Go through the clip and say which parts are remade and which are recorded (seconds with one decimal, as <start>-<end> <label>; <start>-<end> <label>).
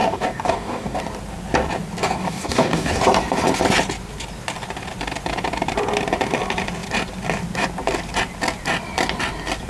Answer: 0.0-1.0 remade; 1.0-2.0 recorded; 2.0-3.0 remade; 3.0-9.7 recorded